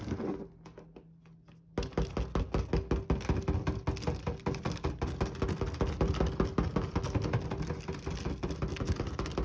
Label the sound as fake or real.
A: real